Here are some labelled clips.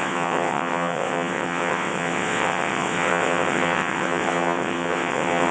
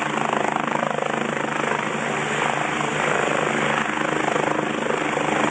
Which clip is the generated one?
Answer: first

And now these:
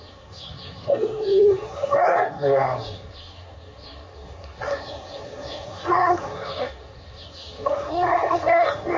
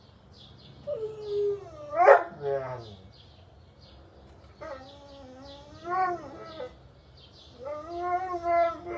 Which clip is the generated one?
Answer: first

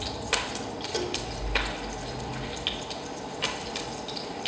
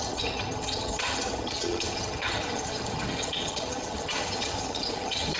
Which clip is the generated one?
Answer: second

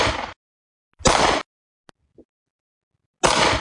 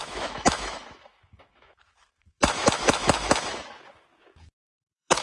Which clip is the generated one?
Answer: second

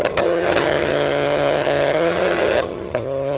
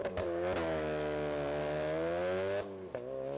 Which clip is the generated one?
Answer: first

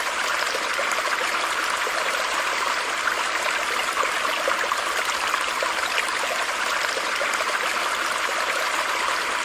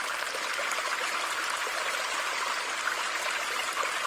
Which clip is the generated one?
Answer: first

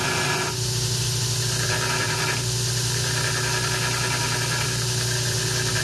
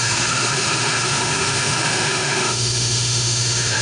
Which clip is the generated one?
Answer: second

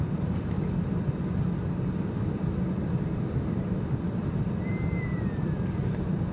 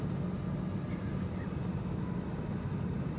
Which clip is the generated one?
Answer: first